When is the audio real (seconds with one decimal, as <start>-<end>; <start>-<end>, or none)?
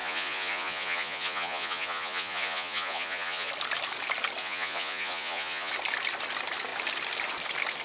3.5-4.4; 5.7-7.8